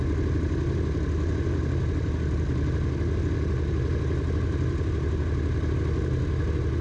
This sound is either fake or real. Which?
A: real